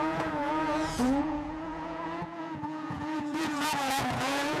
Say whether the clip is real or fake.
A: fake